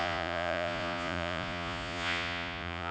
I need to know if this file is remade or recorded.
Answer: remade